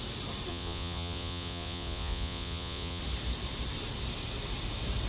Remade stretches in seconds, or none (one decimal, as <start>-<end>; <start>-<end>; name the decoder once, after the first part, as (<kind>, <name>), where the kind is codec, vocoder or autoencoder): 0.5-3.0 (vocoder, Vocos)